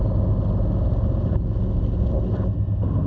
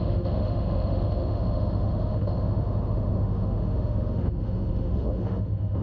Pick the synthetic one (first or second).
second